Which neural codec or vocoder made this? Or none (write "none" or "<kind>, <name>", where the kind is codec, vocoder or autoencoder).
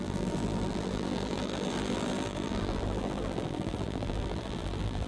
vocoder, BigVGAN v2